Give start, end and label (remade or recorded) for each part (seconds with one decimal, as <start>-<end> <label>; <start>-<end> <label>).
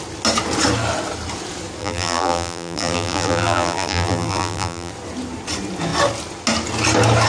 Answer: 0.0-1.8 recorded; 1.8-4.9 remade; 4.9-7.3 recorded